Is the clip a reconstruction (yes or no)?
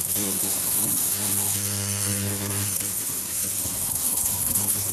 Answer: yes